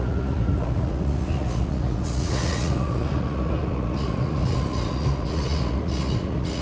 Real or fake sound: fake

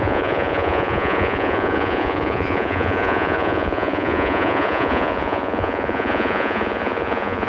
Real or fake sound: fake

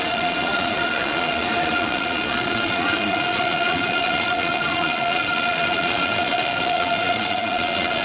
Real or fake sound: fake